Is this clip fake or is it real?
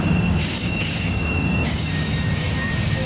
fake